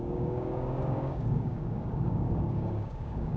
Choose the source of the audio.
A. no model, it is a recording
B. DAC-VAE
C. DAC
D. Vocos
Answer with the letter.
C